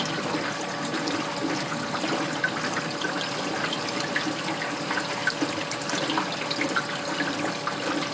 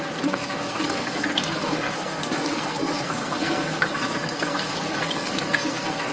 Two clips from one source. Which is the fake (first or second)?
second